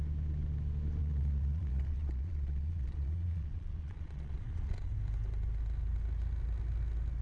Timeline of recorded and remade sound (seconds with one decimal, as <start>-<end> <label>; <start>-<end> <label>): 0.0-1.0 recorded; 1.0-4.9 remade; 4.9-7.2 recorded